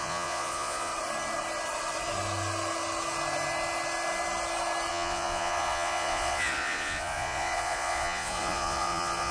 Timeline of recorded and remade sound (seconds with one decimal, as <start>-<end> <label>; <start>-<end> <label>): 0.0-0.9 remade; 0.9-4.9 recorded; 4.9-9.3 remade